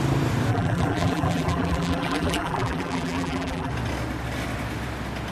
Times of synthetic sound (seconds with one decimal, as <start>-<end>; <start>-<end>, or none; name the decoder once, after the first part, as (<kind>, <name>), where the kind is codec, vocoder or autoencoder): 0.5-3.7 (vocoder, BigVGAN v2)